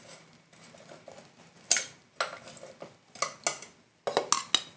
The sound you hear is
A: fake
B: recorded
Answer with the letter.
B